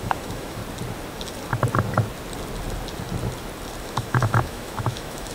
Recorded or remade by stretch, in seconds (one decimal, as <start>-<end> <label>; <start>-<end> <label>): 0.0-0.6 remade; 0.6-3.8 recorded; 3.8-5.3 remade